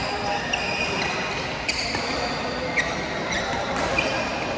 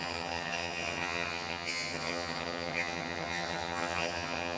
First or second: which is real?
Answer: first